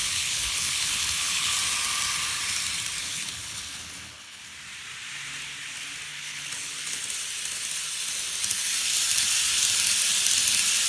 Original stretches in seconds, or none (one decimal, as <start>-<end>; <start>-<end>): 1.5-3.0; 4.4-6.1; 7.0-10.9